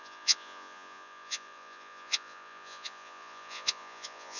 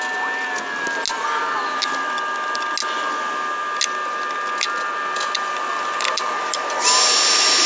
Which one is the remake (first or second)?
first